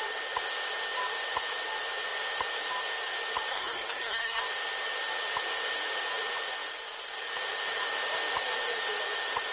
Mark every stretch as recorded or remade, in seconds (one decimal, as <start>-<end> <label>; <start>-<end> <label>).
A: 0.0-3.5 recorded; 3.5-4.4 remade; 4.4-9.5 recorded